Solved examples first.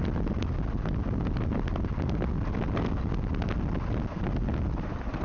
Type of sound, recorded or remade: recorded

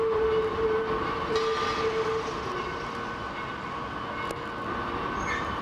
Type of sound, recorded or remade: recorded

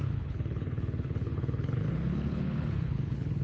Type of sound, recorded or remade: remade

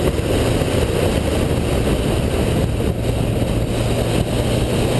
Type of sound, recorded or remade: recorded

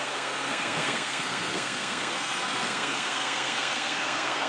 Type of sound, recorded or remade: remade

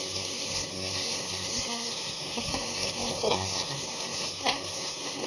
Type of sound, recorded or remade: remade